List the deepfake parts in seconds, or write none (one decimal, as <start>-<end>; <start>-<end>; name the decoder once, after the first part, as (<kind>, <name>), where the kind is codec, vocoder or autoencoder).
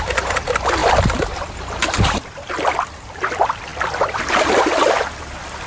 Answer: 0.8-2.5 (vocoder, BigVGAN v2)